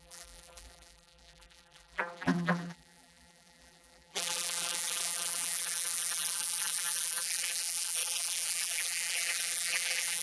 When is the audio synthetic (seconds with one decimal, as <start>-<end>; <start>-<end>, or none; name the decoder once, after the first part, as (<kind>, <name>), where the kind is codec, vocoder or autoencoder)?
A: 0.0-10.2 (vocoder, BigVGAN v2)